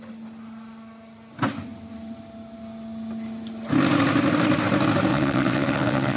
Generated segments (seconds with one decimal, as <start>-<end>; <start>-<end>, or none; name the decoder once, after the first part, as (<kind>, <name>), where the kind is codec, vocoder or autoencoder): 5.1-6.2 (vocoder, WaveNeXt)